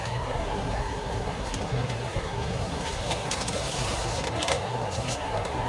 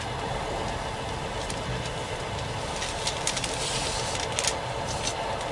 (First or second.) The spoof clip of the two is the first